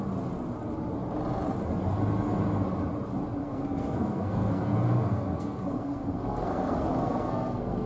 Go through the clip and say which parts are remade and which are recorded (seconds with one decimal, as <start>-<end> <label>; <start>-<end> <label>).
0.0-3.4 recorded; 3.4-7.9 remade